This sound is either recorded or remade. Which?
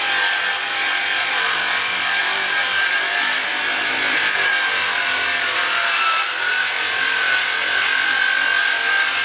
recorded